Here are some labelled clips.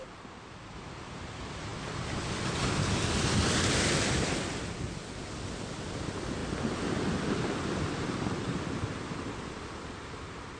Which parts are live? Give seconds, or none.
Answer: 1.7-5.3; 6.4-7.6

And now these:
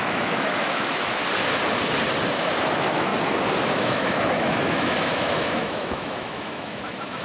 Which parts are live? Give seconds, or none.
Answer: 1.2-2.3; 3.1-3.7

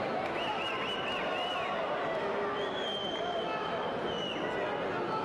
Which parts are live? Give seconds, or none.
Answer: 0.0-5.2

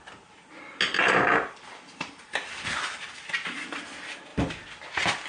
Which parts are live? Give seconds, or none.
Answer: 0.0-5.3

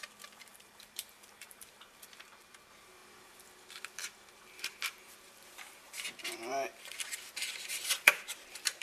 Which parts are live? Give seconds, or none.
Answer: 3.0-4.8